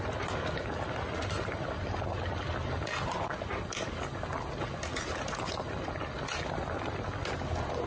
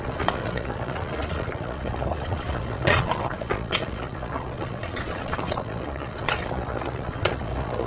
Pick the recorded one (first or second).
first